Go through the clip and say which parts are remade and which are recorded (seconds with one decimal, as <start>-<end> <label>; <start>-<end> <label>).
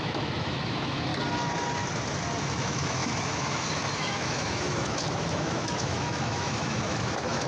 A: 0.0-1.1 remade; 1.1-2.4 recorded; 2.4-7.5 remade